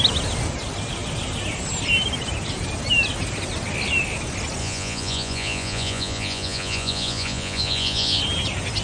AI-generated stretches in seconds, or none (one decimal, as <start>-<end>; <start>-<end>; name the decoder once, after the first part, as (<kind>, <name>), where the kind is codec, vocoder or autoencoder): 4.6-8.2 (vocoder, Vocos)